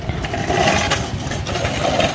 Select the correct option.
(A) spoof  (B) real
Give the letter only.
B